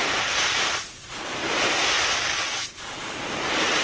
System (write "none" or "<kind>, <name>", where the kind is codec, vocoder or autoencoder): vocoder, BigVGAN v2